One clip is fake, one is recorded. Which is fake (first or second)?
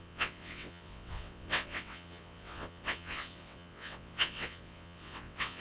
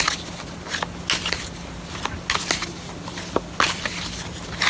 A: first